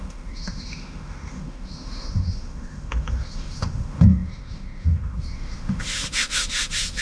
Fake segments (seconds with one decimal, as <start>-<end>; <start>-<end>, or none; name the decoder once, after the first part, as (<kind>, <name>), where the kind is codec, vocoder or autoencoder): 0.0-7.0 (autoencoder, DAC-VAE)